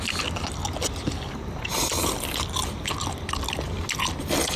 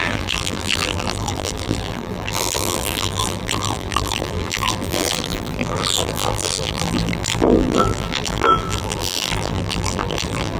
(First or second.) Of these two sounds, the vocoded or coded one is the second